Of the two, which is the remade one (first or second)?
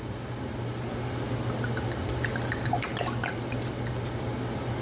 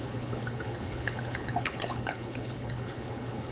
second